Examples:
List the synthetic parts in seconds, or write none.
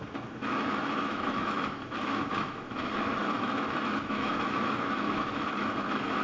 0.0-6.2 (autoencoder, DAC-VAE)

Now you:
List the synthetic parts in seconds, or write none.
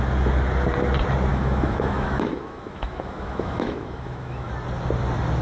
1.3-4.5 (autoencoder, DAC-VAE)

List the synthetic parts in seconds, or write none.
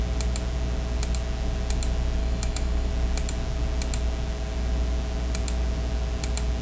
2.2-2.9 (autoencoder, DAC-VAE)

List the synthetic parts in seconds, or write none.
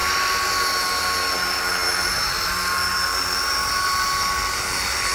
none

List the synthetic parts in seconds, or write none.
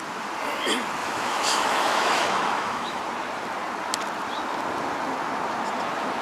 1.0-3.0 (autoencoder, DAC-VAE)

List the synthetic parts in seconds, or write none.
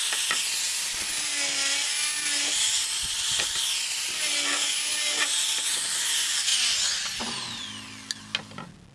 none